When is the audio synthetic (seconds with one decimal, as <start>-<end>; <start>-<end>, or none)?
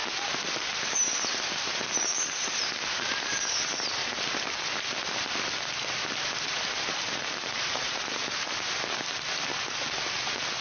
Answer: 0.0-4.0; 7.7-9.5